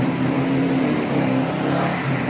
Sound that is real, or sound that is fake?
real